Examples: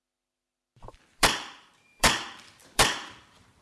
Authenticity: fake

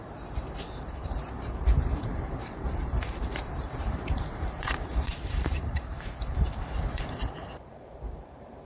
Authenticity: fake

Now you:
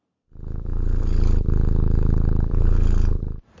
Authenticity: real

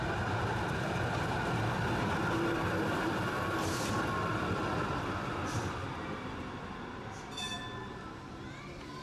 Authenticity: fake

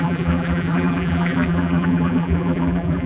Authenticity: fake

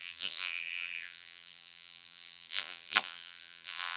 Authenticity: fake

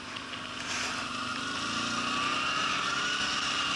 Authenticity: real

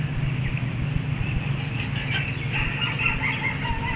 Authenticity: fake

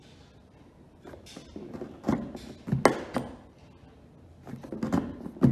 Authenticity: real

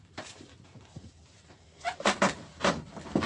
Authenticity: fake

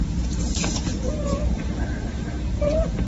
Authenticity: fake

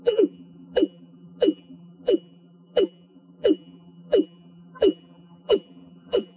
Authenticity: fake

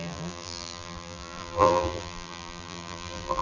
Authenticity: fake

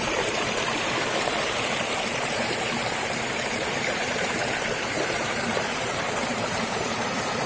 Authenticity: fake